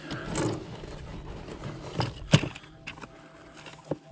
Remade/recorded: recorded